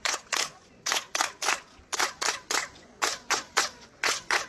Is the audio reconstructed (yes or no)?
yes